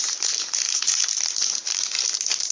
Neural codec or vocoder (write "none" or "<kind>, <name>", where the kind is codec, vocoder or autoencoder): none